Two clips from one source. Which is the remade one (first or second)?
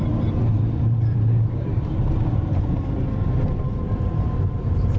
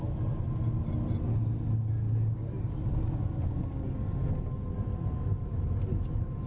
first